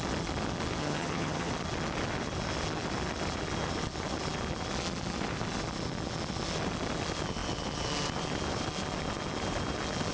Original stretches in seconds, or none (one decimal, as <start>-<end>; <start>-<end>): 0.0-0.8; 1.5-10.1